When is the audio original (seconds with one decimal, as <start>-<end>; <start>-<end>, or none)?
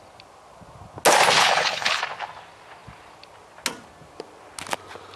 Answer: 0.0-1.4; 2.0-5.2